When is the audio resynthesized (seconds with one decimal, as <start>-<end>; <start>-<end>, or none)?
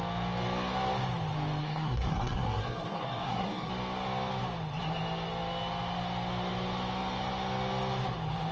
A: 1.6-3.7